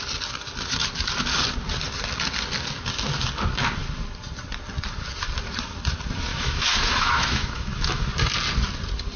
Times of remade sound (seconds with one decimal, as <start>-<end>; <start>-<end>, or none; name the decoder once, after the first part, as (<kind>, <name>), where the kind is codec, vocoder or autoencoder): 6.3-8.1 (autoencoder, DAC-VAE)